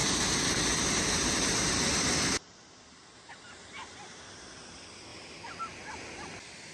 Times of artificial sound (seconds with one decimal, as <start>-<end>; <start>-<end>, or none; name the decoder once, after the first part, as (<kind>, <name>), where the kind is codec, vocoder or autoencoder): none